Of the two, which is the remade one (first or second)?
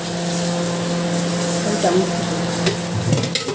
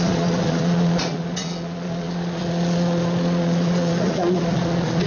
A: second